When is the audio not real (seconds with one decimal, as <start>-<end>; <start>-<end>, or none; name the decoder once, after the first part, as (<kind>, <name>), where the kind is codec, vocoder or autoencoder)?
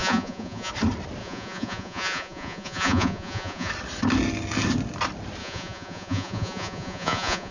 0.0-0.7 (vocoder, Vocos); 1.2-3.7; 5.4-7.5